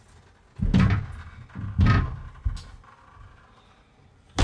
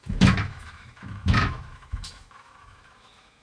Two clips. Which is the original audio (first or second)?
first